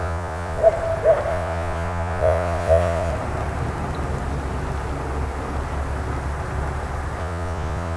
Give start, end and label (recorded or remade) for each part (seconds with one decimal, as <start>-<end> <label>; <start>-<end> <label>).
0.0-0.6 remade; 0.6-1.3 recorded; 1.3-3.1 remade; 3.1-7.2 recorded; 7.2-8.0 remade